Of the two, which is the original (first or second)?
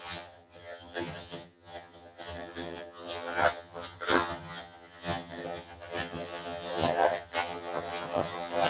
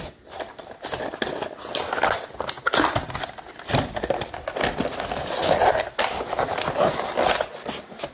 second